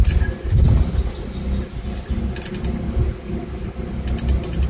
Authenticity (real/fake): real